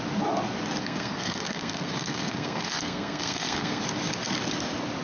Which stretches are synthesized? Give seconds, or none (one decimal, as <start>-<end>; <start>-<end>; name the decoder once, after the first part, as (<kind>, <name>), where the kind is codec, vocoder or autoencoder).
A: 0.8-3.8 (codec, SNAC)